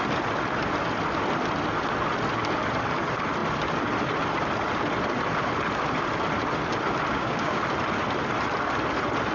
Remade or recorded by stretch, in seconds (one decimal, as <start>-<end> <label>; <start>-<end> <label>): 0.0-7.1 recorded; 7.1-7.6 remade; 7.6-9.3 recorded